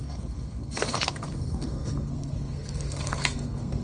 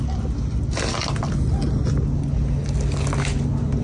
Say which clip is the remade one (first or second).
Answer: first